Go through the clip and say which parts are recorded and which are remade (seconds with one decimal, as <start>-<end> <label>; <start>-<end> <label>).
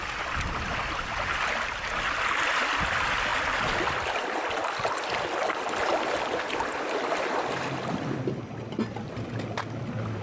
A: 0.0-10.2 recorded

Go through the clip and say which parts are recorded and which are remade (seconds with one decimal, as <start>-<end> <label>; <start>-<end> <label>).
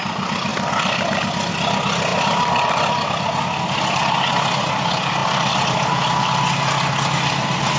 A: 0.0-2.1 recorded; 2.1-2.9 remade; 2.9-5.2 recorded; 5.2-6.4 remade; 6.4-7.8 recorded